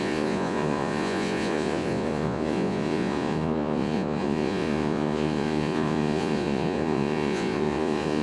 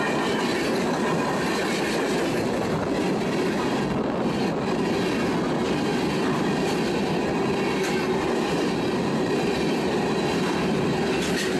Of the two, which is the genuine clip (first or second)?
second